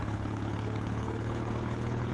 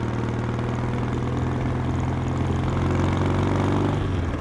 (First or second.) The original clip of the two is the second